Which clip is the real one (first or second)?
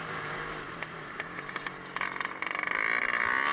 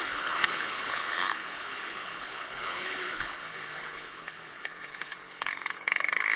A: first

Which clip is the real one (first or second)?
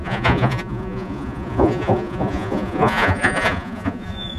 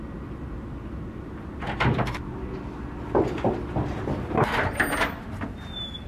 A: second